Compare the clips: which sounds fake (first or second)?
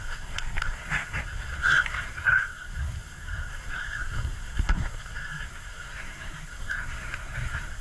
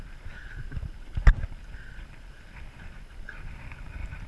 first